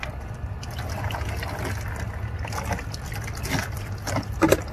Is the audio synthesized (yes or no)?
no